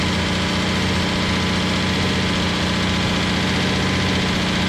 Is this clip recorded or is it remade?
recorded